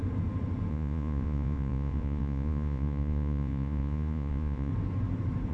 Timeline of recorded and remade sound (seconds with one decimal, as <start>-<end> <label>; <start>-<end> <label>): 0.0-0.7 recorded; 0.7-4.7 remade; 4.7-5.5 recorded